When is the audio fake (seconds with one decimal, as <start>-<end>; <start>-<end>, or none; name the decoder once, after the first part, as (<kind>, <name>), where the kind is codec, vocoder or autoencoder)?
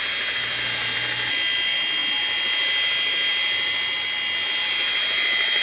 none